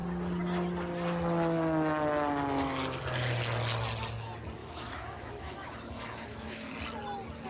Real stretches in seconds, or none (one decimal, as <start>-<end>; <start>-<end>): 0.0-4.6; 6.7-7.5